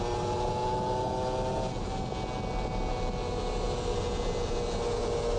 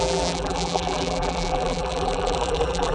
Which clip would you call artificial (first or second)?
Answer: second